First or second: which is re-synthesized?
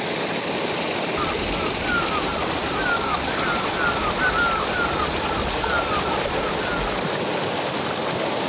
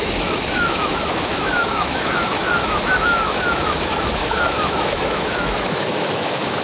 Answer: second